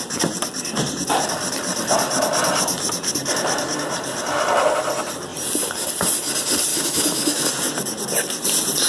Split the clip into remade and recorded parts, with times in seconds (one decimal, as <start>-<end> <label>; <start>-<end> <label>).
0.0-6.7 recorded; 6.7-7.5 remade; 7.5-8.9 recorded